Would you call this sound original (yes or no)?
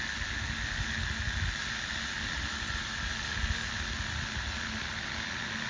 yes